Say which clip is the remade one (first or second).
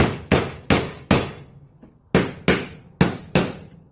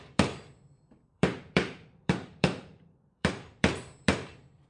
second